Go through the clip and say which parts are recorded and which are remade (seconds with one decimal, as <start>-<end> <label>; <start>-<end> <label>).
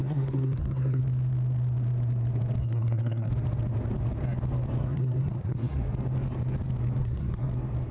0.0-1.0 remade; 1.0-2.6 recorded; 2.6-3.3 remade; 3.3-4.8 recorded; 4.8-5.9 remade; 5.9-7.0 recorded; 7.0-7.5 remade; 7.5-7.9 recorded